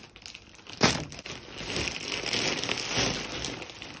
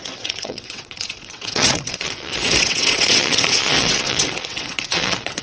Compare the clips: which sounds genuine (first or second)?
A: first